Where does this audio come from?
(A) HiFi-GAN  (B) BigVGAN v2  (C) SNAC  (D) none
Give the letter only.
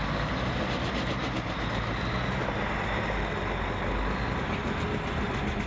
D